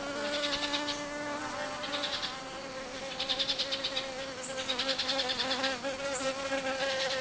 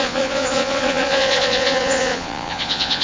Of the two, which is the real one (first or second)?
first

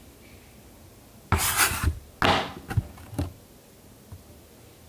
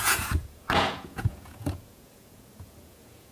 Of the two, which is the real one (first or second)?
first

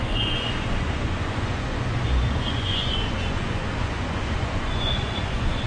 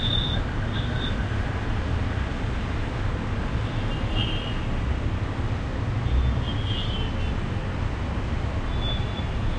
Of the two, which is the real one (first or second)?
second